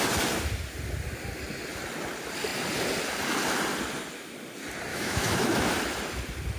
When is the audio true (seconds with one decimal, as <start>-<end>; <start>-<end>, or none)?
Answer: 0.0-4.9; 5.7-6.6